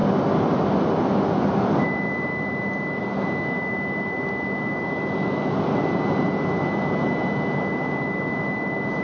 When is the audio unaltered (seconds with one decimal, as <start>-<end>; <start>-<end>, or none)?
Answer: 0.0-9.0